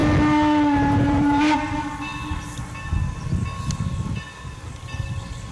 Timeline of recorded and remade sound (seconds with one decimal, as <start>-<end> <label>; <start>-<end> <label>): 0.0-1.0 recorded; 1.0-2.1 remade; 2.1-5.5 recorded